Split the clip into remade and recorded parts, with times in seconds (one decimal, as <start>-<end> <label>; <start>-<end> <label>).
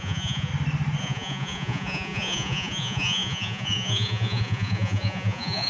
0.0-0.5 remade; 0.5-1.0 recorded; 1.0-5.7 remade